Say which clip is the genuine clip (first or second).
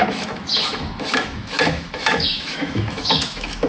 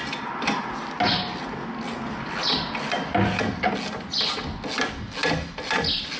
second